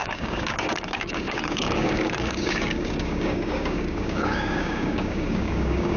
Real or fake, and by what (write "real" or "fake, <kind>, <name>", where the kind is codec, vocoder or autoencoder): fake, codec, DAC